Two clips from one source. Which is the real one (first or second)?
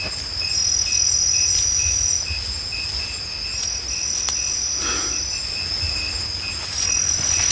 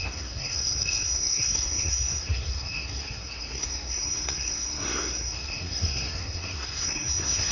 first